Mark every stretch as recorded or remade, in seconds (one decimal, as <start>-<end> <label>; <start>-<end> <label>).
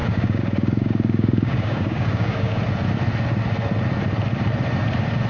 0.0-2.6 remade; 2.6-5.3 recorded